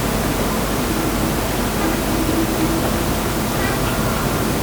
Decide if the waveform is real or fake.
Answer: real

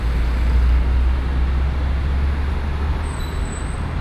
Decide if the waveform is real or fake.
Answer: real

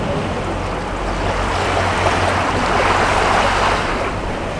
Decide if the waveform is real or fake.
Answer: real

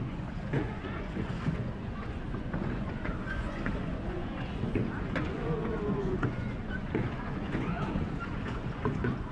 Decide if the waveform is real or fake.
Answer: fake